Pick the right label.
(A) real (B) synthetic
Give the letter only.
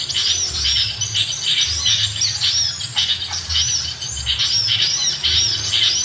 A